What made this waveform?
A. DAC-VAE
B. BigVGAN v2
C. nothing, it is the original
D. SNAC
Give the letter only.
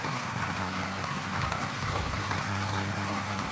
D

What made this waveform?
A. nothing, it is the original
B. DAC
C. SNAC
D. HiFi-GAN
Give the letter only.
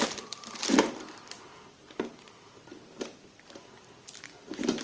A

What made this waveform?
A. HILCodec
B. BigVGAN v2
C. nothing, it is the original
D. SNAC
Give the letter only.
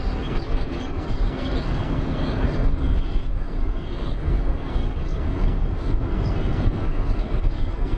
D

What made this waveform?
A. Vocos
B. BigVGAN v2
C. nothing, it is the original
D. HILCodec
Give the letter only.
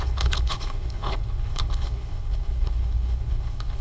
D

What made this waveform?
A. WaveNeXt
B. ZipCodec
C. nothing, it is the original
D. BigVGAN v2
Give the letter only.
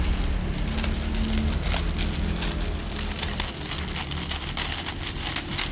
C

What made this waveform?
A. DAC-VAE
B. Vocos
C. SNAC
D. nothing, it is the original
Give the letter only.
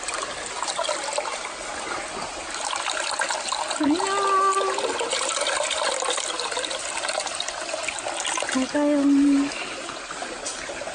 D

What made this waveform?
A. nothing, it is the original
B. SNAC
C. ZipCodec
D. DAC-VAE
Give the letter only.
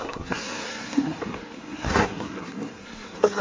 B